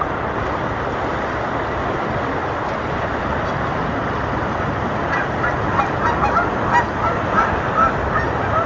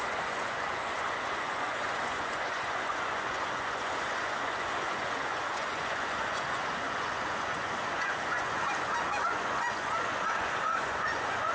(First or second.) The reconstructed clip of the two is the second